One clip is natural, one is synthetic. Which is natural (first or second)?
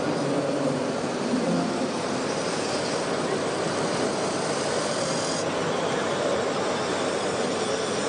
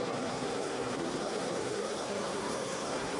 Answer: first